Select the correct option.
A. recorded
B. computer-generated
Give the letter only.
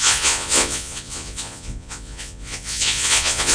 B